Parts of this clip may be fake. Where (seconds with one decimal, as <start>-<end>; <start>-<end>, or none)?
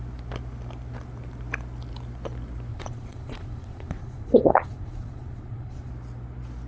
2.7-5.9